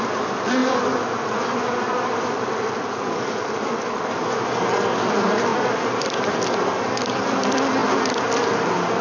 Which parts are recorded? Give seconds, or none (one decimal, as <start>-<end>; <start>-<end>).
0.0-0.6; 4.4-5.5; 7.2-9.0